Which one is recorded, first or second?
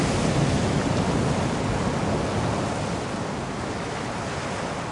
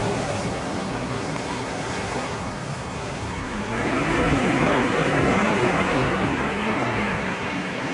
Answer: first